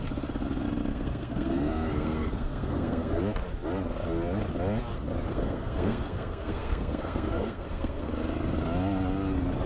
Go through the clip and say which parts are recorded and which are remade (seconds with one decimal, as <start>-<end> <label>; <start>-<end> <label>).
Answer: 0.0-0.9 recorded; 0.9-3.2 remade; 3.2-5.3 recorded; 5.3-8.1 remade; 8.1-9.7 recorded